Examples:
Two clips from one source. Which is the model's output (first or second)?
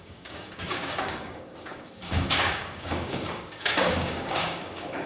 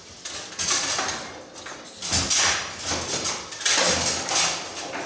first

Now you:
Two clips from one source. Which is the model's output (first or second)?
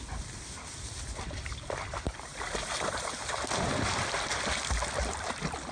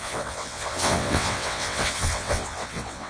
second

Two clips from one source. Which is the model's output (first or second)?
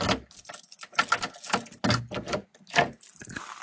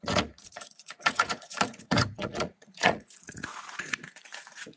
second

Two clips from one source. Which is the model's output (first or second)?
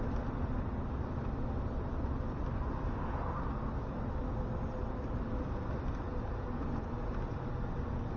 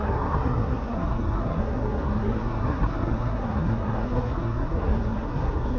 second